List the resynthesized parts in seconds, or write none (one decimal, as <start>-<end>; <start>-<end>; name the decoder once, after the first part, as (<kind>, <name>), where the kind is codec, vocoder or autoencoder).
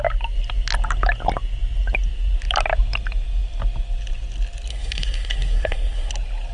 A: 4.7-6.1 (codec, SNAC)